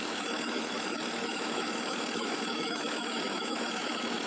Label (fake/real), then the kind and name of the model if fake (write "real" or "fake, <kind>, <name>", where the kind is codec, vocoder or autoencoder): fake, autoencoder, DAC-VAE